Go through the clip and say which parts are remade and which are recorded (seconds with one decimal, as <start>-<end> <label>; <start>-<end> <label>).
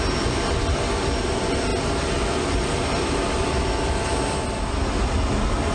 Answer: 0.0-5.7 recorded